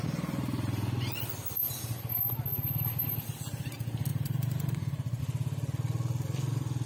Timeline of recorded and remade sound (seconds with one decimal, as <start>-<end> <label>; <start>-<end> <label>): 0.0-4.1 recorded; 4.1-5.2 remade; 5.2-6.9 recorded